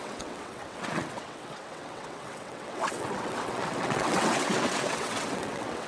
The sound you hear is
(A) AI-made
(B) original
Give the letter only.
A